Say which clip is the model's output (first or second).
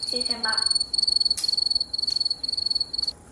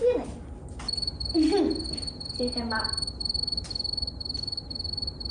first